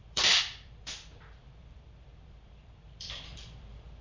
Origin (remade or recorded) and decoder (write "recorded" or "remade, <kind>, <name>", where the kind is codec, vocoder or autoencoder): remade, vocoder, BigVGAN v2